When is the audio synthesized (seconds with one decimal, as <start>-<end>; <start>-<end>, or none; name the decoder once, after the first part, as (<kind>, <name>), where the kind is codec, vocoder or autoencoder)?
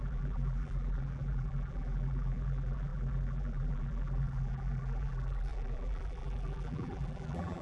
0.0-7.6 (vocoder, BigVGAN v2)